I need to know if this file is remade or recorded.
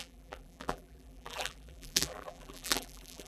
remade